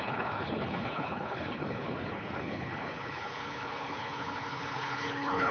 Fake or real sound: fake